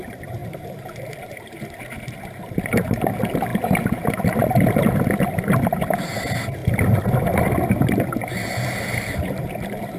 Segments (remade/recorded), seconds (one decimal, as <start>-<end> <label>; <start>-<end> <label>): 0.0-3.5 remade; 3.5-4.8 recorded; 4.8-6.6 remade; 6.6-8.9 recorded; 8.9-10.0 remade